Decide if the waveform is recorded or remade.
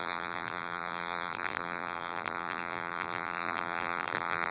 remade